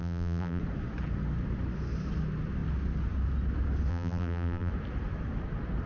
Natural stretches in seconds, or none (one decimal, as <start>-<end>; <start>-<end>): 0.6-3.9; 4.7-5.9